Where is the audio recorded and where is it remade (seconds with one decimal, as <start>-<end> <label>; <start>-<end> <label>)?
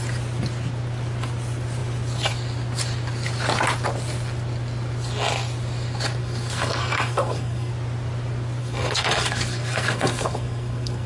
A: 0.0-6.2 recorded; 6.2-7.7 remade; 7.7-8.6 recorded; 8.6-11.1 remade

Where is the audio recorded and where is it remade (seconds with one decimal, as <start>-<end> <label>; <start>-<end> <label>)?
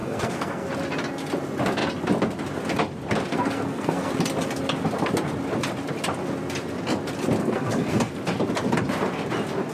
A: 0.0-0.7 remade; 0.7-3.3 recorded; 3.3-4.1 remade; 4.1-7.4 recorded; 7.4-8.1 remade; 8.1-9.7 recorded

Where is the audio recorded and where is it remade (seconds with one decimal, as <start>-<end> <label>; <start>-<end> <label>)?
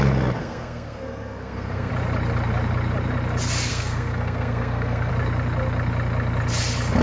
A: 0.0-0.4 recorded; 0.4-1.9 remade; 1.9-3.7 recorded; 3.7-5.1 remade; 5.1-7.0 recorded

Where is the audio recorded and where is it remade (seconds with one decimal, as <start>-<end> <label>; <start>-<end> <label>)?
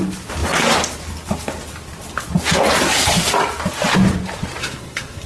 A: 0.0-4.6 recorded; 4.6-5.3 remade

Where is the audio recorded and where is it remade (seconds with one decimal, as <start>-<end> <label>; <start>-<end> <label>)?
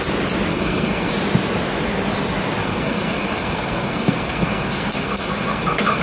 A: 0.0-0.5 recorded; 0.5-1.1 remade; 1.1-2.6 recorded; 2.6-6.0 remade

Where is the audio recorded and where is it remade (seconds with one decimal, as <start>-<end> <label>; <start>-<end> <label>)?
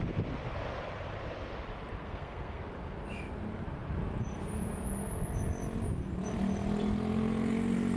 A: 0.0-2.0 recorded; 2.0-2.6 remade; 2.6-8.0 recorded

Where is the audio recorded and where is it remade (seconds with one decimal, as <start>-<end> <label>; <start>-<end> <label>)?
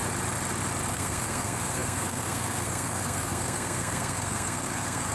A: 0.0-0.9 recorded; 0.9-5.1 remade